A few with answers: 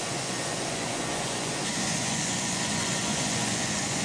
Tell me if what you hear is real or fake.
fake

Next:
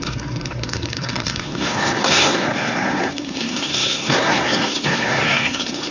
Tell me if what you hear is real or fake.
fake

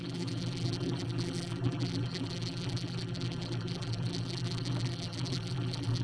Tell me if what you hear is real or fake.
fake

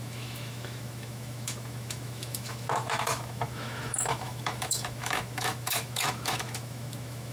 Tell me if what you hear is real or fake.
fake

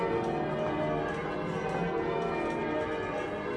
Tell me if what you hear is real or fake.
real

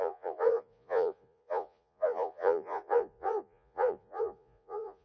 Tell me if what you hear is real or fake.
fake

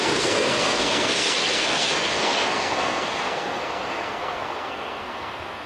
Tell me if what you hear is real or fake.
fake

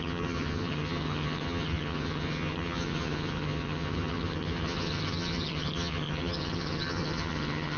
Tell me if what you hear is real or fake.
fake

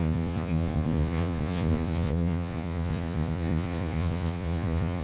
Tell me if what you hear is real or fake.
fake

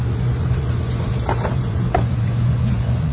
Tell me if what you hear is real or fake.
fake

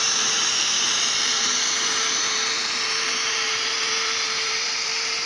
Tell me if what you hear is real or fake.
fake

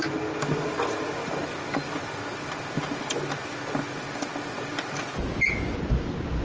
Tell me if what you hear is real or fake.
real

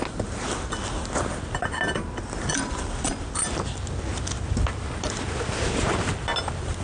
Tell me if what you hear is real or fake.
real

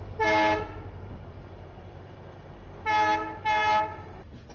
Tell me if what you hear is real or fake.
real